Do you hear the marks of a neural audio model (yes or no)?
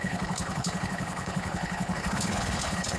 yes